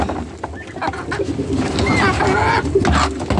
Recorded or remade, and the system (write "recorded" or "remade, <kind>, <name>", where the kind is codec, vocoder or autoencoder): recorded